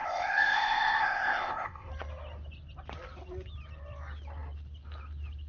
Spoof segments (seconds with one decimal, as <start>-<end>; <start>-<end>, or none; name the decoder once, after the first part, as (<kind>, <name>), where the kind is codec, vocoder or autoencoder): 0.0-1.9 (codec, ZipCodec)